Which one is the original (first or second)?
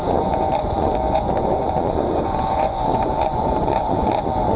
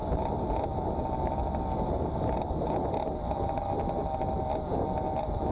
second